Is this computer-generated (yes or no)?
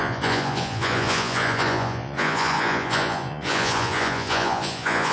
yes